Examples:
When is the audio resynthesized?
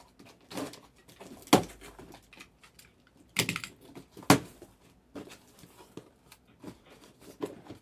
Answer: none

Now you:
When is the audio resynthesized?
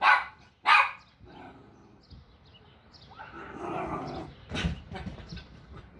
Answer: none